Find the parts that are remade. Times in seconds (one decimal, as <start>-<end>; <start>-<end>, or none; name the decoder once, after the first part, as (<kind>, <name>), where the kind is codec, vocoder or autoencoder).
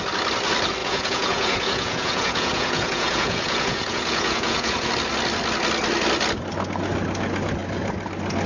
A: 0.8-4.9 (vocoder, Vocos)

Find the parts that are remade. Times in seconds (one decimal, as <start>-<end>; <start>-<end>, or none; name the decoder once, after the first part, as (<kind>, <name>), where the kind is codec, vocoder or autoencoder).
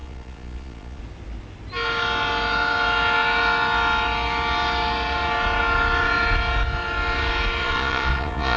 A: 0.0-1.0 (vocoder, Vocos); 7.6-8.6